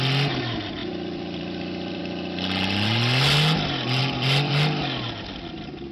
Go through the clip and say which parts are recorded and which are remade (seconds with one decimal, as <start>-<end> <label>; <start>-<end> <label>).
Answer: 0.0-0.8 recorded; 0.8-2.0 remade; 2.0-4.0 recorded; 4.0-4.5 remade; 4.5-5.9 recorded